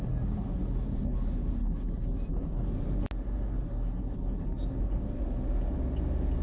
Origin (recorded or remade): recorded